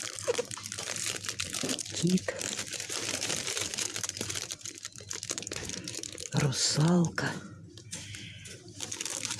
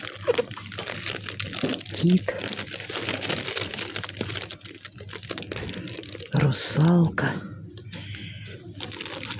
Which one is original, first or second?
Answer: second